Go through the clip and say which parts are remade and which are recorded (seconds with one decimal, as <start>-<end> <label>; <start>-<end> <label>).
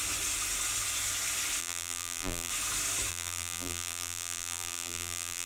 0.0-1.6 recorded; 1.6-2.5 remade; 2.5-3.1 recorded; 3.1-5.5 remade